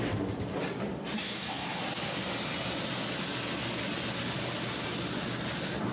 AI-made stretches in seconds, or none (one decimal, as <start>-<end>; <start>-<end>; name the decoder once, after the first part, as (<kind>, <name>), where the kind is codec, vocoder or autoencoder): 1.2-1.8 (autoencoder, DAC-VAE)